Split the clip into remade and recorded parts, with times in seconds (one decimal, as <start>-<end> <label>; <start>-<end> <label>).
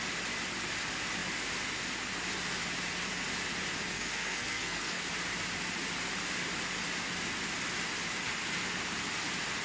0.0-3.9 recorded; 3.9-5.0 remade; 5.0-9.6 recorded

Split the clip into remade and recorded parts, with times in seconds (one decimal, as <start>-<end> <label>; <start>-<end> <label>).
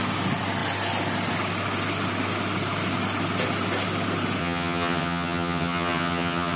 0.0-4.4 recorded; 4.4-6.6 remade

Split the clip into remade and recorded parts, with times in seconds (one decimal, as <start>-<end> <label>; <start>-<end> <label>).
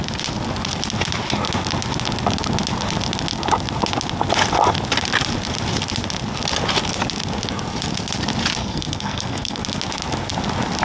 0.0-8.6 recorded; 8.6-9.6 remade; 9.6-10.8 recorded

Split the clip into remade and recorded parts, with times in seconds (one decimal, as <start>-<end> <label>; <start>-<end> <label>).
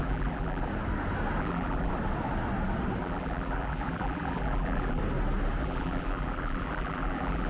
0.0-0.7 remade; 0.7-1.4 recorded; 1.4-1.9 remade; 1.9-3.0 recorded; 3.0-5.0 remade; 5.0-5.6 recorded; 5.6-7.5 remade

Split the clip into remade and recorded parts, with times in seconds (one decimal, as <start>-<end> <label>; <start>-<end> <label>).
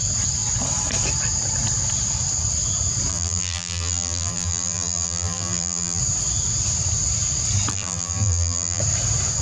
0.0-3.1 recorded; 3.1-6.0 remade; 6.0-7.7 recorded; 7.7-8.8 remade; 8.8-9.4 recorded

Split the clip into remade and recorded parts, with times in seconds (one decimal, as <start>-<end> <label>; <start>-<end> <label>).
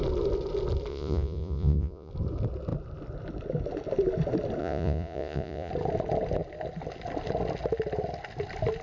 0.0-0.9 recorded; 0.9-2.1 remade; 2.1-4.6 recorded; 4.6-5.7 remade; 5.7-8.8 recorded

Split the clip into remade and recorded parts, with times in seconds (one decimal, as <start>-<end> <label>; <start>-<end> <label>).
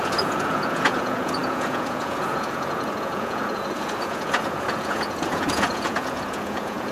0.0-6.9 remade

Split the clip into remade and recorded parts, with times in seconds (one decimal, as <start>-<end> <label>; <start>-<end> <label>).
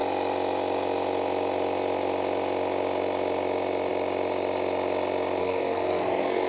0.0-5.4 recorded; 5.4-6.5 remade